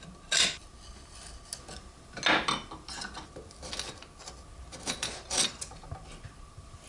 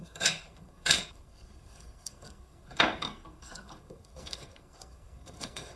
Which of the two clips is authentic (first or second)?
first